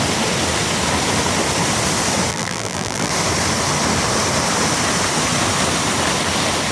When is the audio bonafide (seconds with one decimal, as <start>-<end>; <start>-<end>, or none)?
0.0-2.3; 3.1-6.7